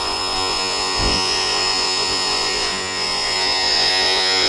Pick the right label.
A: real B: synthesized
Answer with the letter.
B